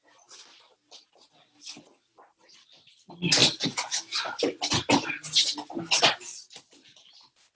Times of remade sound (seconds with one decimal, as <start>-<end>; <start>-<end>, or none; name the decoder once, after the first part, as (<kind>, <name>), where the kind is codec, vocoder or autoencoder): none